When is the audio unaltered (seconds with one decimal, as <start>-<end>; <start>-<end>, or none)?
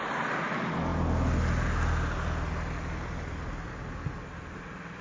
0.0-5.0